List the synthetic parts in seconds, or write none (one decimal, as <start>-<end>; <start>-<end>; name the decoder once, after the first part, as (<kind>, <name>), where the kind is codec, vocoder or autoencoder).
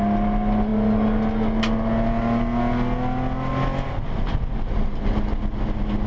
none